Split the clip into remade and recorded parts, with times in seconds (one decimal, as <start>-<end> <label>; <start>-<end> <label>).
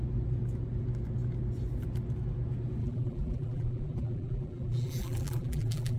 0.0-2.8 recorded; 2.8-6.0 remade